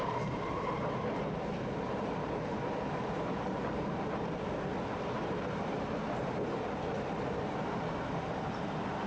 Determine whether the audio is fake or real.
fake